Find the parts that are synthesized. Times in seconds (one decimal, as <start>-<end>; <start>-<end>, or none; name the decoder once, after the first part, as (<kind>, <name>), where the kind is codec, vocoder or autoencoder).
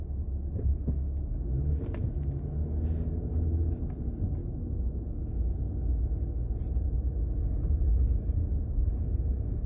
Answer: 4.4-5.6 (autoencoder, DAC-VAE)